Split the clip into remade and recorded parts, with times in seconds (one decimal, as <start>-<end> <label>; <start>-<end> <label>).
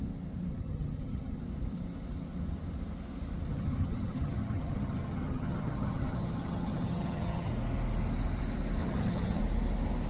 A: 0.0-0.5 recorded; 0.5-1.4 remade; 1.4-3.5 recorded; 3.5-7.5 remade; 7.5-8.8 recorded; 8.8-9.4 remade; 9.4-10.1 recorded